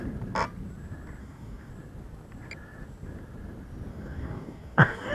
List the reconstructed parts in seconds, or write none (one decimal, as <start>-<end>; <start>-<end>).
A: 1.2-1.7; 3.9-5.1